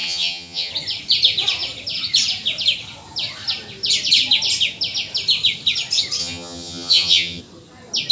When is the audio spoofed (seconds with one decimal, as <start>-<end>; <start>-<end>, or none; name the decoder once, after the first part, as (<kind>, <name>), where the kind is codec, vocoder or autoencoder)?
0.0-0.7 (vocoder, HiFi-GAN); 6.2-7.4

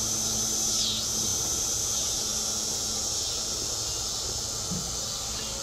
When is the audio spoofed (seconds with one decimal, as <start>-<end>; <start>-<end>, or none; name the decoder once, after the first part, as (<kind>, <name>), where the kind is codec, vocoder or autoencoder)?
none

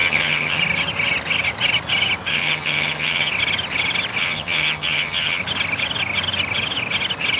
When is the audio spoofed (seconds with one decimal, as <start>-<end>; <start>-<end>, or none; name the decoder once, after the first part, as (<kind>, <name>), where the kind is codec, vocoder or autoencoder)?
0.0-0.6 (vocoder, HiFi-GAN); 2.3-3.3; 4.2-5.4

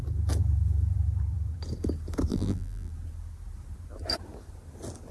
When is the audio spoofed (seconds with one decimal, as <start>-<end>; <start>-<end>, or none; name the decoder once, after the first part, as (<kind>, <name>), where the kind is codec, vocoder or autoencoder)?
2.3-2.9 (vocoder, BigVGAN v2)

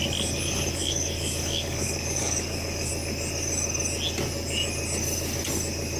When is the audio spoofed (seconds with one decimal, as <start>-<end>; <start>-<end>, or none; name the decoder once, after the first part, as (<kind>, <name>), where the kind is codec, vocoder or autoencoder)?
0.8-2.9 (codec, DAC)